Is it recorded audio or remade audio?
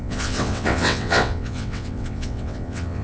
remade